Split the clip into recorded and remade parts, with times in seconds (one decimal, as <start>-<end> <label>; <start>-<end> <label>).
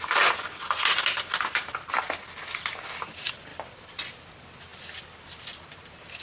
0.0-3.5 recorded; 3.5-4.3 remade; 4.3-6.2 recorded